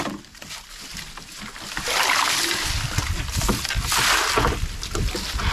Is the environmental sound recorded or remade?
recorded